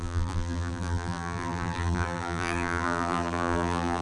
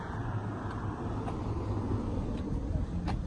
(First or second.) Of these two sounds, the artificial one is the first